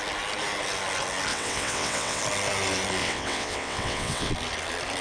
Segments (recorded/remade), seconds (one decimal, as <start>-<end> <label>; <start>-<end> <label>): 0.0-1.3 recorded; 1.3-2.2 remade; 2.2-3.0 recorded; 3.0-4.3 remade; 4.3-5.0 recorded